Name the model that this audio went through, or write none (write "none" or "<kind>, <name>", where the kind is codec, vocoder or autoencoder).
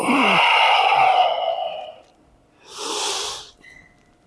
none